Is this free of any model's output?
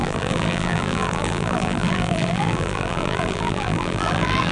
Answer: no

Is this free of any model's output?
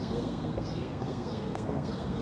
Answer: no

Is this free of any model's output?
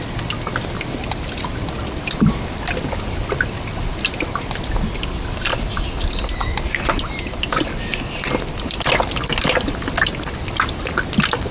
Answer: yes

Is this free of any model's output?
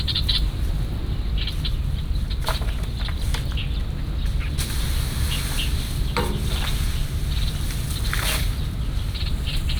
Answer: yes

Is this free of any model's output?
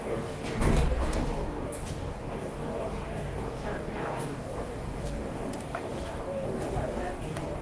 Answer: no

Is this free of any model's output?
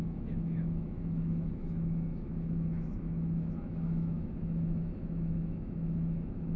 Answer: no